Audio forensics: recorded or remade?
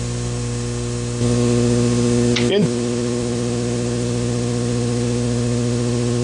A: recorded